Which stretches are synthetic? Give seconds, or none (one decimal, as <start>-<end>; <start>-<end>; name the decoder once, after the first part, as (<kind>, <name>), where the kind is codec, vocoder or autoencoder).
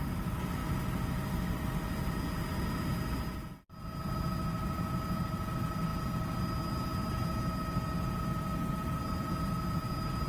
none